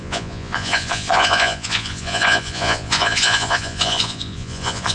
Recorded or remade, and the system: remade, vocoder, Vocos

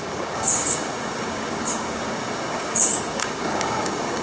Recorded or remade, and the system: remade, codec, DAC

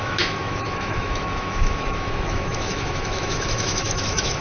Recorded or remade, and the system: remade, autoencoder, DAC-VAE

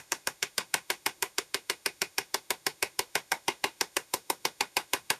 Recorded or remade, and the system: remade, autoencoder, DAC-VAE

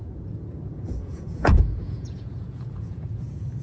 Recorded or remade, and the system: remade, vocoder, Vocos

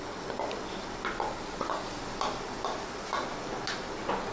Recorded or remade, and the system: recorded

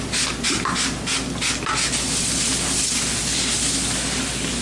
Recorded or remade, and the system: recorded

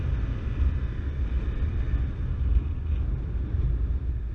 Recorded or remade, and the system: recorded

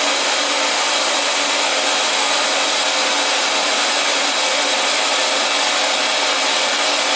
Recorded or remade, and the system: recorded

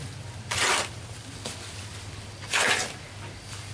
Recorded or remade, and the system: recorded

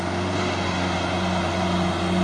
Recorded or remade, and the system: recorded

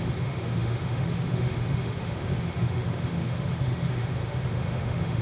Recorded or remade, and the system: remade, autoencoder, DAC-VAE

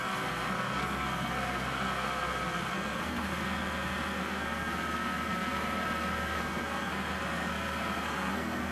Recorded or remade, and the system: remade, codec, SNAC